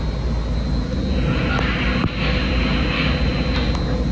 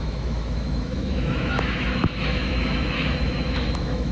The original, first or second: first